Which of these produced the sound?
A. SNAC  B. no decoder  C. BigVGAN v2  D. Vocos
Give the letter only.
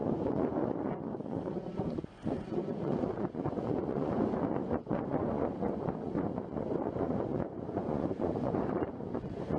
D